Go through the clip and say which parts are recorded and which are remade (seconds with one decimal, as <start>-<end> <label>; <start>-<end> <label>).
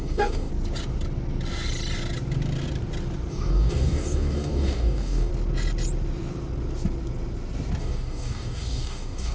0.0-0.5 remade; 0.5-3.3 recorded; 3.3-5.3 remade; 5.3-7.8 recorded; 7.8-9.3 remade